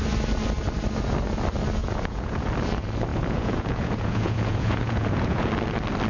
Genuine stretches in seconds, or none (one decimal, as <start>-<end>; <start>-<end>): 0.0-1.8; 2.5-3.1; 5.5-6.1